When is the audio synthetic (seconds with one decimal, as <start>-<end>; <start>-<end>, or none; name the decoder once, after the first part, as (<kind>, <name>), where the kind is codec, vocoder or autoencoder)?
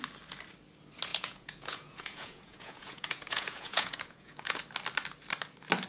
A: 1.1-4.6 (vocoder, Vocos)